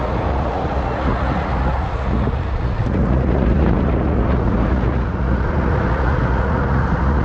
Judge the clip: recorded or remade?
remade